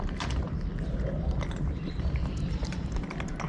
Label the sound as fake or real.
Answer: real